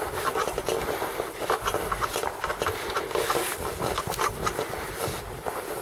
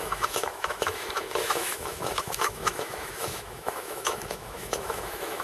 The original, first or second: first